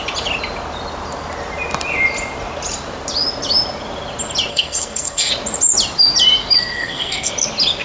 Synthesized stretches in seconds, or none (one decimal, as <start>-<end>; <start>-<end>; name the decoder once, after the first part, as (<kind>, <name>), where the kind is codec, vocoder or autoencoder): 4.5-5.3 (codec, SNAC); 6.6-7.3